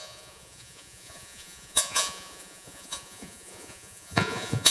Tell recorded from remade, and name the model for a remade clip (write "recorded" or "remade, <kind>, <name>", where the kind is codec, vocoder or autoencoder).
remade, vocoder, Vocos